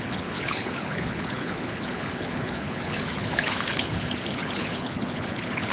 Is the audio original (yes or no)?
no